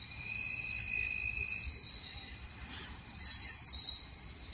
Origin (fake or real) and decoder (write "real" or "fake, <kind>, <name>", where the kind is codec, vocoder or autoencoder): real